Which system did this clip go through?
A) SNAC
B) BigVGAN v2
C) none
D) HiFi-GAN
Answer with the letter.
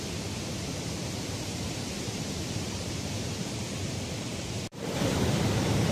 B